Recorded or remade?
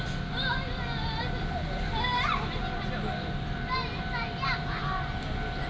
recorded